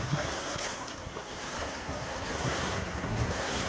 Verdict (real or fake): fake